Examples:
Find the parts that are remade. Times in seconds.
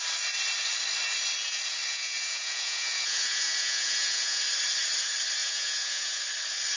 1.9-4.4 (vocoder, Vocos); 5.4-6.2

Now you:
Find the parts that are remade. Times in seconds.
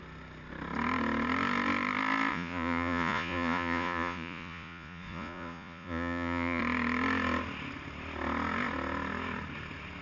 2.3-6.6 (vocoder, Vocos)